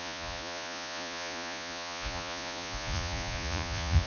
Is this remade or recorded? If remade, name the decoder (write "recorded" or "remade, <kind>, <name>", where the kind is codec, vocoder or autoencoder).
remade, vocoder, Vocos